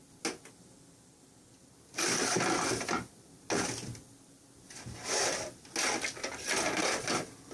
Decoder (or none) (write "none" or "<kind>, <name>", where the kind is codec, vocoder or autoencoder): none